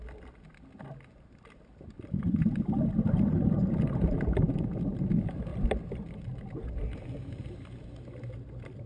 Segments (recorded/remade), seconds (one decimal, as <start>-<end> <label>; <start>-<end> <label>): 0.0-8.9 recorded